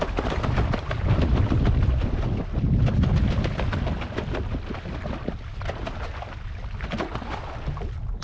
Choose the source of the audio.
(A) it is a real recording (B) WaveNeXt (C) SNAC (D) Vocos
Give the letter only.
A